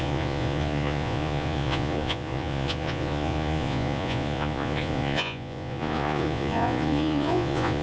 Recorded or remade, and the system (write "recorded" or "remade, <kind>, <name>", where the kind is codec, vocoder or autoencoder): remade, vocoder, Vocos